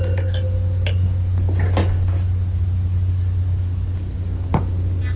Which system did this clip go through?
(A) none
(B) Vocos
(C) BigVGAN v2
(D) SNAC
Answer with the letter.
A